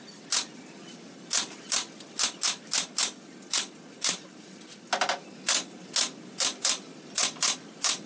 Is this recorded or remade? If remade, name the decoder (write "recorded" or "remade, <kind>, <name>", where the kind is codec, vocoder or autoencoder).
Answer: recorded